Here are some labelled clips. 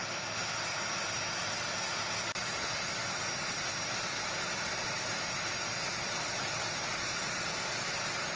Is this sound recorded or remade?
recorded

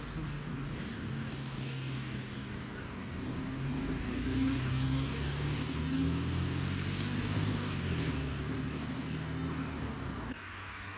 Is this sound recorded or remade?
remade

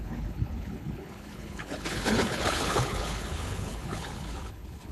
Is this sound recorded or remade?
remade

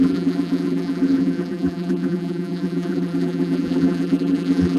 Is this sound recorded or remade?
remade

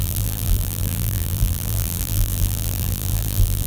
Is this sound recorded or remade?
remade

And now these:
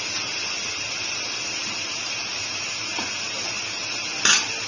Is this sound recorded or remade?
recorded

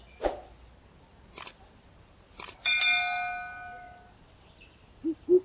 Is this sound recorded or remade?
recorded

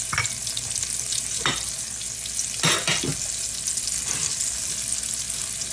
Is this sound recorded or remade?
recorded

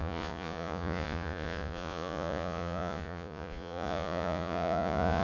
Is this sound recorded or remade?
remade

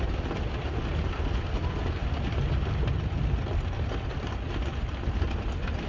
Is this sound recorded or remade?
recorded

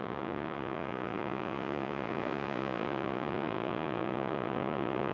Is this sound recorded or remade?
remade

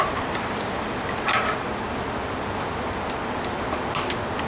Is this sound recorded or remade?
recorded